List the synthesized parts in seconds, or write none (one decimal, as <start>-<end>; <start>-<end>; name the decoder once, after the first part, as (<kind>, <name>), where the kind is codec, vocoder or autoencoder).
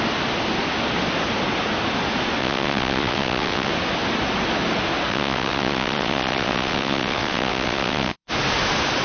2.4-3.7 (vocoder, WaveNeXt); 5.1-8.3